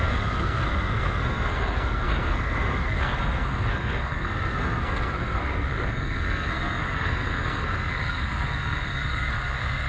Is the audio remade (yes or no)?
yes